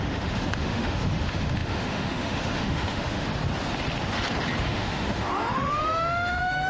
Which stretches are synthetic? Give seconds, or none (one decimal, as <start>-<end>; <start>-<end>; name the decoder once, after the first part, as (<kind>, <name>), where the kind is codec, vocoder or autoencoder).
0.0-3.3 (autoencoder, DAC-VAE); 4.6-6.7